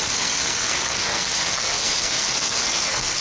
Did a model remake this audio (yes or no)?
yes